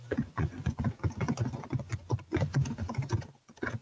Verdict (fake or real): fake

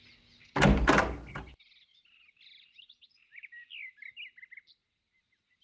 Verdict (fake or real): real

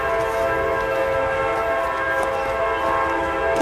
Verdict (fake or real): real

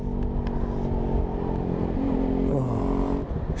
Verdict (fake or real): real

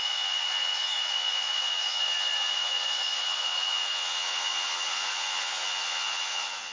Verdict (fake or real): fake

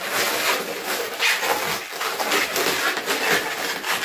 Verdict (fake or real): real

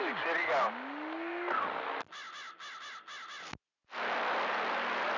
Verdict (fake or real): real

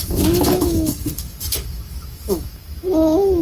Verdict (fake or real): fake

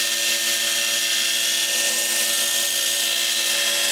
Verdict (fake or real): real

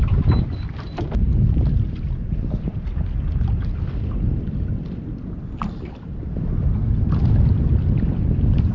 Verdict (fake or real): real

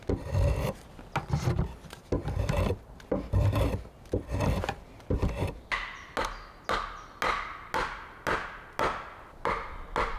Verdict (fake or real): real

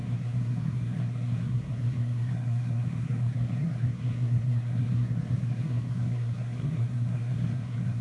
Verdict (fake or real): fake